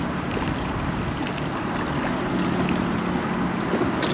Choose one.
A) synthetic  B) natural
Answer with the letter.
B